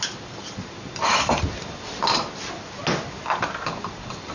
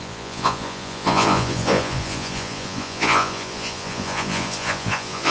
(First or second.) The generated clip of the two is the second